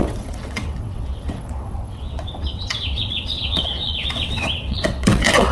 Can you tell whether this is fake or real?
fake